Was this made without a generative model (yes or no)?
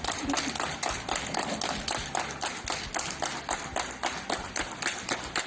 yes